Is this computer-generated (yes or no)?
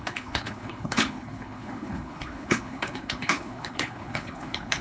yes